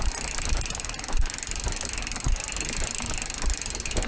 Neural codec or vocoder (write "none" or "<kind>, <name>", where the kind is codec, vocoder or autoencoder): none